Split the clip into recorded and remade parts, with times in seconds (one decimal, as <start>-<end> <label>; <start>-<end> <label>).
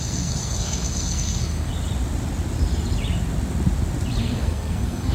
0.0-1.7 remade; 1.7-4.2 recorded; 4.2-5.1 remade